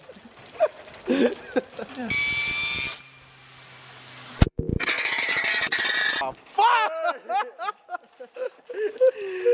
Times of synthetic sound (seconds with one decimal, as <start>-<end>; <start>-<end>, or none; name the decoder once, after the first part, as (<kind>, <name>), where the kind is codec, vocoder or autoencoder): none